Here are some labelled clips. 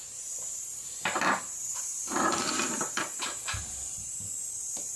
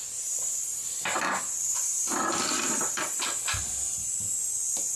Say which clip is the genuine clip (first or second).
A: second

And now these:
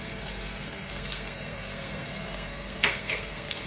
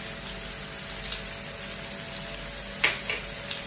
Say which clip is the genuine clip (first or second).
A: second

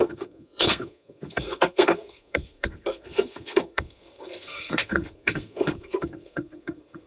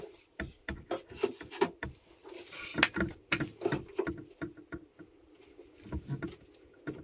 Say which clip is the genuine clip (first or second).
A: second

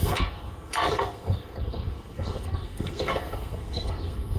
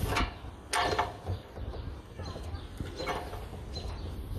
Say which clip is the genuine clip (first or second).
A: second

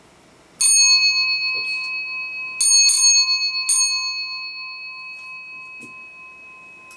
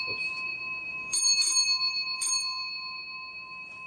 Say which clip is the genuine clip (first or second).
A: first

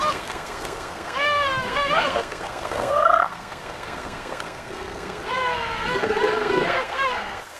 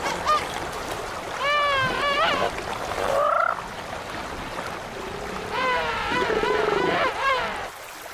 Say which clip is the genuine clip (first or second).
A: second